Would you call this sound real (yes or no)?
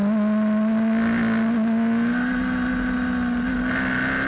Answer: yes